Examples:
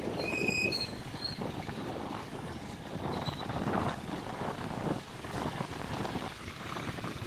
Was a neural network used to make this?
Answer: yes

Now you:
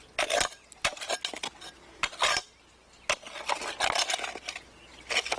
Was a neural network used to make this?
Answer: no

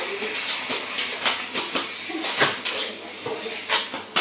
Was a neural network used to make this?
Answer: no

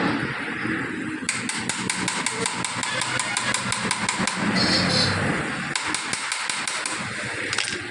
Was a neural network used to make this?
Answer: no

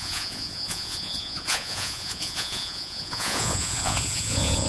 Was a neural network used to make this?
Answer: yes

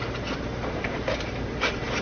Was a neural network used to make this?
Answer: yes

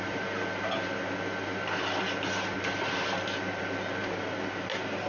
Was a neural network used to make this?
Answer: no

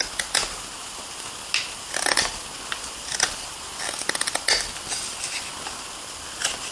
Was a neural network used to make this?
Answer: no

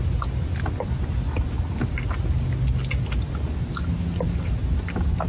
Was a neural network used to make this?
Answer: no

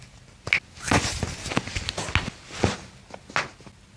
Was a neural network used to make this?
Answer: no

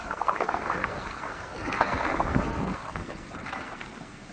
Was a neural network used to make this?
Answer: yes